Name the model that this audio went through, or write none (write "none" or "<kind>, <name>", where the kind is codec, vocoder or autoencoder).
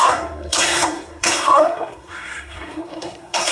codec, SNAC